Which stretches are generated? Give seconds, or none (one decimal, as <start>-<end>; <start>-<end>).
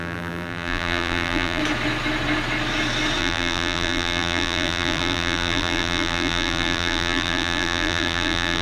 0.0-1.6; 3.2-8.6